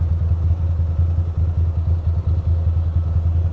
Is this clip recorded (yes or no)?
yes